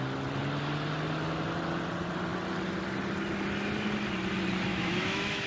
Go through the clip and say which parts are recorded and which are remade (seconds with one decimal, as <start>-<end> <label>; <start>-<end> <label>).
0.0-4.7 recorded; 4.7-5.5 remade